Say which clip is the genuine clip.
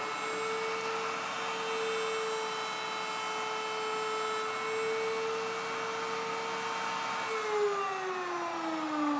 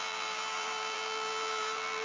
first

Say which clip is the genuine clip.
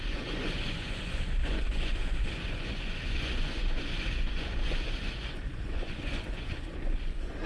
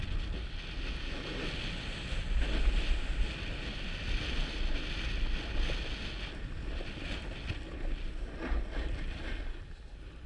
second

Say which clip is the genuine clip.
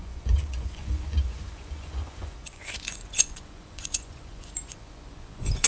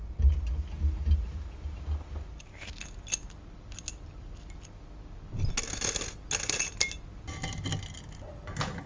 second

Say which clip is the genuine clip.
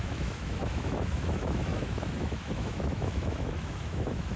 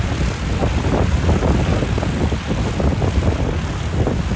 second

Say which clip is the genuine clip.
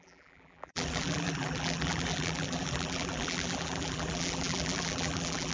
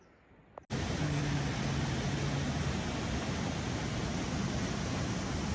second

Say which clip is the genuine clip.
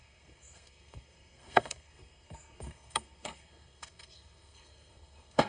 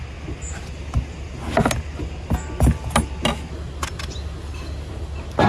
second